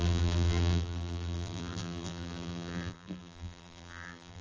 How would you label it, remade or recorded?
remade